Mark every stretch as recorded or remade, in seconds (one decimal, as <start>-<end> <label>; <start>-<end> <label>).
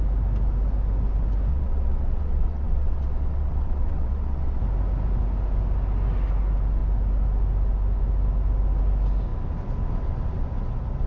0.0-1.5 recorded; 1.5-4.6 remade; 4.6-11.1 recorded